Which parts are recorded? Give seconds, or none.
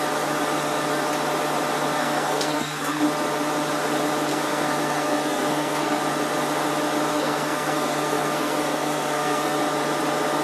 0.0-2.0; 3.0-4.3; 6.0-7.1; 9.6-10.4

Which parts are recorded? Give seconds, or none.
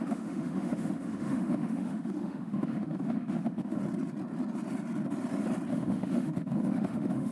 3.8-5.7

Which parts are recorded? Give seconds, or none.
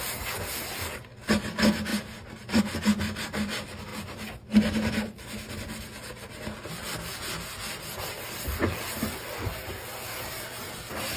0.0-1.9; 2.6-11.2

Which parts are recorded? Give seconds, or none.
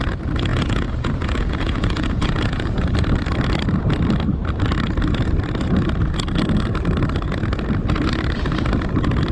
0.0-0.5; 2.9-9.3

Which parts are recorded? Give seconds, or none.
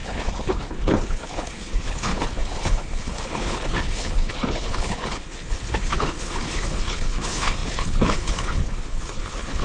none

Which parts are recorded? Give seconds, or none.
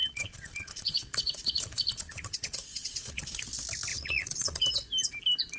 3.4-3.9; 4.6-5.6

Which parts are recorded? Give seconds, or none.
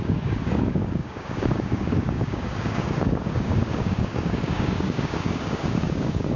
none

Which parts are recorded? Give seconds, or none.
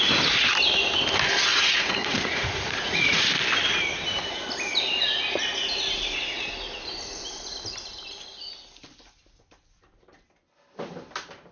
0.0-1.5; 3.3-11.5